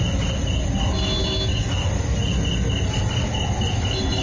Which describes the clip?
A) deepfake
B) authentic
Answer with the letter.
B